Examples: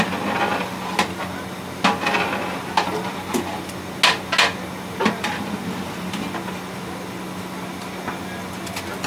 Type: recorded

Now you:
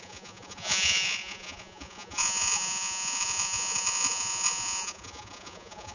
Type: remade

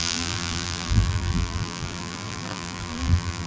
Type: remade